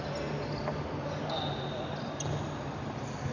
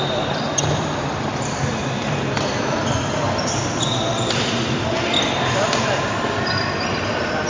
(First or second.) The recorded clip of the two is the first